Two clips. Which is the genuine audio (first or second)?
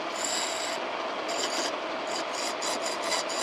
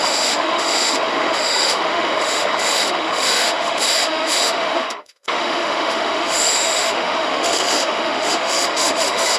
first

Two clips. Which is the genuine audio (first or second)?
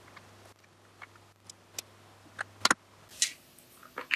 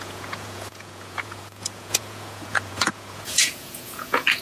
first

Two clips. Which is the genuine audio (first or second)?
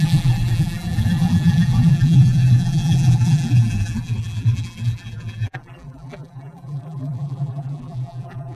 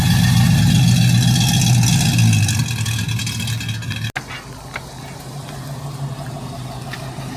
second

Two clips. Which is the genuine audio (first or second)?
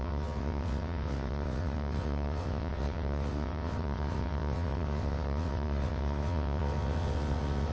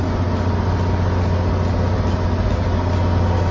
second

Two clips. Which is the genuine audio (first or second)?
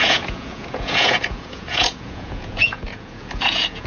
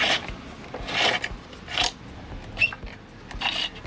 second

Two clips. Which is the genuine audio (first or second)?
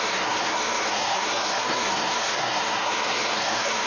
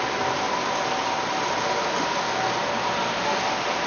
second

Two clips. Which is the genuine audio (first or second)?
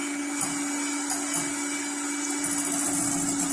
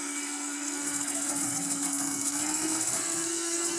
first